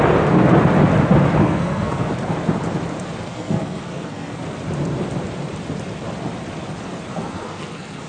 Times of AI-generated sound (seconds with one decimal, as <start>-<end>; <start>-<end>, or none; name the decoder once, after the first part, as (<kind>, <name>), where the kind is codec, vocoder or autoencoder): 1.4-2.1 (codec, SNAC); 3.3-4.4; 7.1-8.1